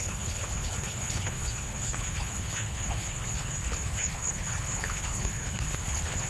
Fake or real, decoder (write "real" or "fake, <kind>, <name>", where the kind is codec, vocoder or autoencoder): fake, codec, HILCodec